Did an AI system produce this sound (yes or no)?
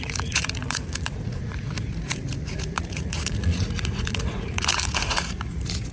yes